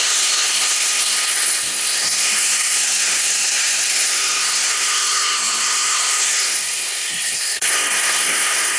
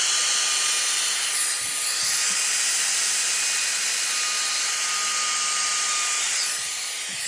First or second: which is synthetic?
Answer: first